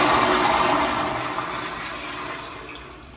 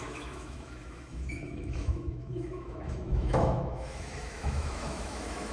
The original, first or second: first